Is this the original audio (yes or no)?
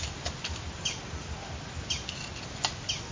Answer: yes